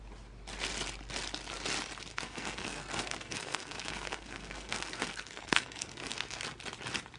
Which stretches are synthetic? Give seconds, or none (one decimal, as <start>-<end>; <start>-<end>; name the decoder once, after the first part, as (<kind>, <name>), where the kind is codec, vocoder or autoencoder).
2.1-6.4 (codec, SNAC)